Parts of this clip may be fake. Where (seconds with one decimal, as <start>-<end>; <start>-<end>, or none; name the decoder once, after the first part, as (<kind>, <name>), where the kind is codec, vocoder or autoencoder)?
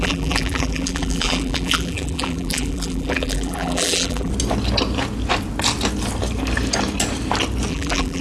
0.0-4.3 (vocoder, BigVGAN v2); 7.7-8.2